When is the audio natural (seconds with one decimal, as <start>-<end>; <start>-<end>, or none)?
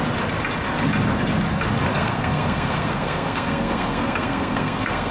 0.0-1.9